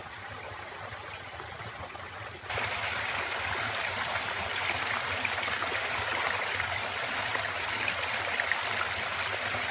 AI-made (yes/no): no